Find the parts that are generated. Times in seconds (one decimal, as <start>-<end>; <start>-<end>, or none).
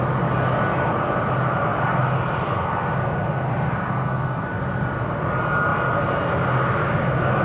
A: none